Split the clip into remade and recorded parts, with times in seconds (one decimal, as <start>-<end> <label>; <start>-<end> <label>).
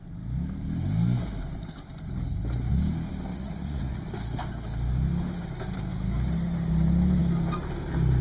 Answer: 0.0-3.3 recorded; 3.3-4.0 remade; 4.0-8.2 recorded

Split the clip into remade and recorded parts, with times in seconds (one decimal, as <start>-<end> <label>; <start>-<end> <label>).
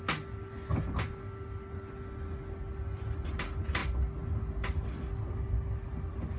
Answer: 0.0-6.4 recorded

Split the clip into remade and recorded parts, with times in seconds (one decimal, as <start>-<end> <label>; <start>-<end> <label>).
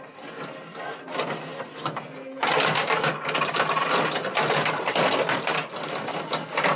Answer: 0.0-6.8 recorded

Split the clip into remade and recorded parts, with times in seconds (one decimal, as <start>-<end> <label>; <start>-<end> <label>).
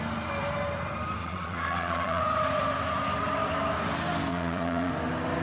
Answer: 0.0-1.2 recorded; 1.2-2.2 remade; 2.2-4.3 recorded; 4.3-4.9 remade; 4.9-5.4 recorded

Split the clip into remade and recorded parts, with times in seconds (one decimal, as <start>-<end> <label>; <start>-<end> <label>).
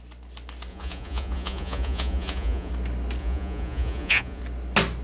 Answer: 0.0-0.7 recorded; 0.7-2.7 remade; 2.7-3.2 recorded; 3.2-4.4 remade; 4.4-5.0 recorded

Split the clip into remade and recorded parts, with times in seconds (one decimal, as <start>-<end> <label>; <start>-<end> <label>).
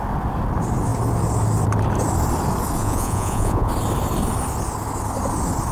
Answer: 0.0-2.8 recorded; 2.8-3.7 remade; 3.7-5.7 recorded